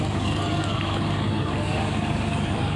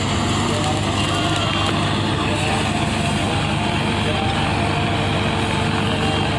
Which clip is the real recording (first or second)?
second